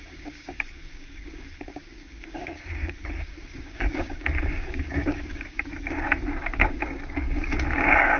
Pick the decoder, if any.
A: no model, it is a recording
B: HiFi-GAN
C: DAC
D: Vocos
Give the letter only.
C